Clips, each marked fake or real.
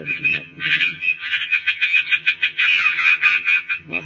fake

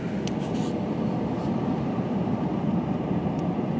real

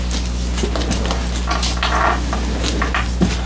real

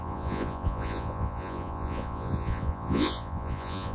fake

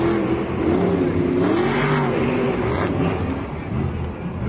real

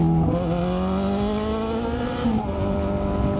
real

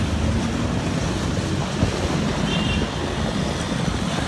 real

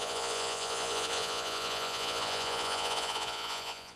fake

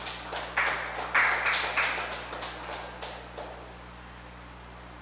real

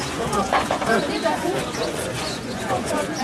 fake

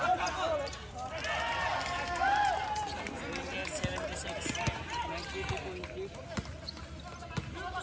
real